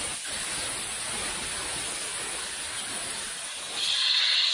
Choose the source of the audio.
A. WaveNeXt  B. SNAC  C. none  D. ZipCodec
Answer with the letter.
C